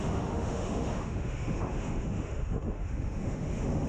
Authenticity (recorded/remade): remade